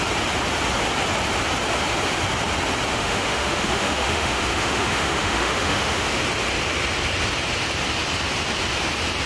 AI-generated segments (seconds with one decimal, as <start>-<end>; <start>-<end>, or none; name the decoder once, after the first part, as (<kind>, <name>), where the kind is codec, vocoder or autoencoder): 2.9-6.2 (autoencoder, DAC-VAE)